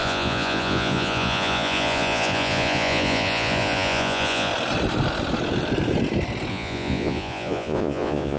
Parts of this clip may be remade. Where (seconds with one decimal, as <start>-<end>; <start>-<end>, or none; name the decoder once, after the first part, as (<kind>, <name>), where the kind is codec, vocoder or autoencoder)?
0.0-4.5 (vocoder, Vocos); 6.5-8.4